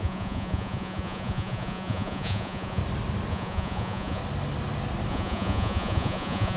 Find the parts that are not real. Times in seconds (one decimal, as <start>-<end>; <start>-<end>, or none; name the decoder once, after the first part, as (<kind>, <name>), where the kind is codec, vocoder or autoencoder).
0.0-2.8 (vocoder, Vocos); 3.3-4.2; 5.1-6.6

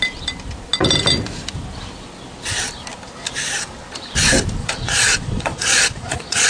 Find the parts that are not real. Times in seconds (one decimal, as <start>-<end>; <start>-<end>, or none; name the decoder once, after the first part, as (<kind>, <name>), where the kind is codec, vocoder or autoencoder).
4.6-6.5 (vocoder, Vocos)

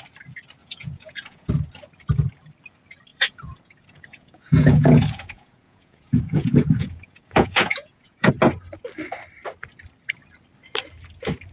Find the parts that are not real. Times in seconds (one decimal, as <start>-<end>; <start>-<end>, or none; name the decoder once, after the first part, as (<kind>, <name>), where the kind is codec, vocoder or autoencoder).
0.6-1.5 (vocoder, Vocos); 3.1-8.3

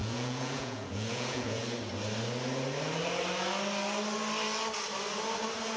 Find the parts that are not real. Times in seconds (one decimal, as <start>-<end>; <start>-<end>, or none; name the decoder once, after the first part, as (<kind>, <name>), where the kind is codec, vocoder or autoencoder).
0.0-1.6 (vocoder, Vocos)

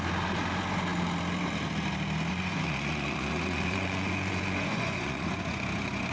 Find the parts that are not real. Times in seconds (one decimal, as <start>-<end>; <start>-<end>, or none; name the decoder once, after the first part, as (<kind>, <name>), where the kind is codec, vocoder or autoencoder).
2.3-6.1 (vocoder, Vocos)

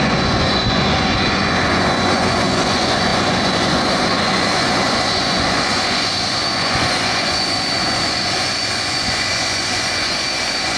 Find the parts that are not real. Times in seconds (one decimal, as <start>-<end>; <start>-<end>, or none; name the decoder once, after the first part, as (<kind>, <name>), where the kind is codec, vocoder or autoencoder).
0.0-10.8 (vocoder, Vocos)